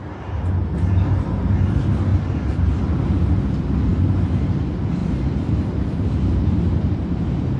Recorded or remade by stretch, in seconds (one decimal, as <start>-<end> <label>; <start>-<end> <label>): 0.0-2.1 recorded; 2.1-2.8 remade; 2.8-5.0 recorded; 5.0-7.6 remade